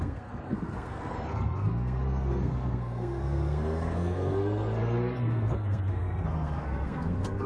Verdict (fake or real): fake